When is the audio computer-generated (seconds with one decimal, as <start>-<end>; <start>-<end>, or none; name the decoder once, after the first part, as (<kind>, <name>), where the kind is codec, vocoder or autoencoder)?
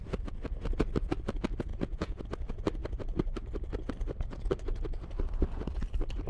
1.7-2.2 (vocoder, Vocos)